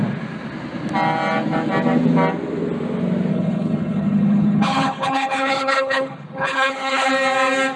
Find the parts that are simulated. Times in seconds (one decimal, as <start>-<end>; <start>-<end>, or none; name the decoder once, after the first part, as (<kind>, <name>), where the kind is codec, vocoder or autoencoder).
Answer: 3.3-7.1 (codec, HILCodec)